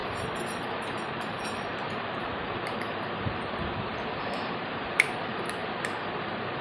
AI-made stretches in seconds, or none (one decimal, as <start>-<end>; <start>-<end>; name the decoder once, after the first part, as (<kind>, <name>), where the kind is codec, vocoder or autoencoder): 0.0-3.9 (vocoder, BigVGAN v2); 4.4-5.6; 6.1-6.6

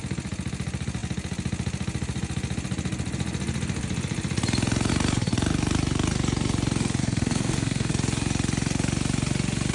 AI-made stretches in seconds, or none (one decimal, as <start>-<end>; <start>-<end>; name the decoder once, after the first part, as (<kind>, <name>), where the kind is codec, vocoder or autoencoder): 7.0-7.9 (codec, SNAC)